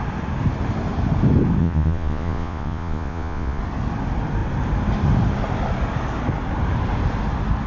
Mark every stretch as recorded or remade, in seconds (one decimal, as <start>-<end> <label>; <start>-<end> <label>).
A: 0.0-1.6 recorded; 1.6-3.6 remade; 3.6-7.7 recorded